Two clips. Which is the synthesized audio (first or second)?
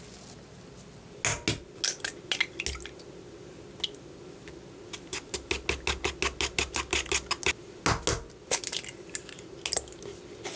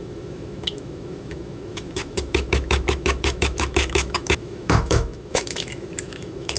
second